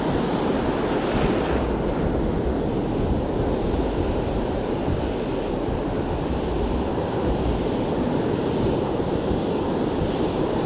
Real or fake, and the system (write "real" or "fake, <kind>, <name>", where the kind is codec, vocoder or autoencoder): real